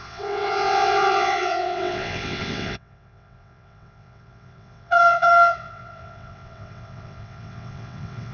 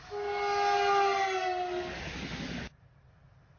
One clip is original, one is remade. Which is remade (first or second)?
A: first